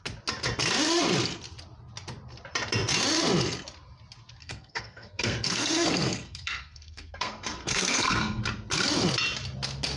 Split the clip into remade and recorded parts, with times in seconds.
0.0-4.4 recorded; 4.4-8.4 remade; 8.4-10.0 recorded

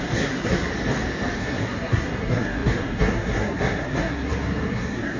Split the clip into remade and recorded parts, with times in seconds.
0.0-0.7 remade; 0.7-1.4 recorded; 1.4-5.2 remade

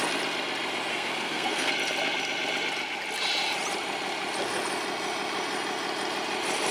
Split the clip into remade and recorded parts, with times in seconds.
0.0-0.9 recorded; 0.9-1.7 remade; 1.7-6.7 recorded